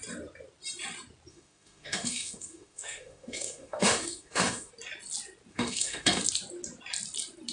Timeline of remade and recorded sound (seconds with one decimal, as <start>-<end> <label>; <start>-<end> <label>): 0.0-1.3 recorded; 1.3-4.7 remade; 4.7-5.5 recorded; 5.5-6.2 remade; 6.2-7.5 recorded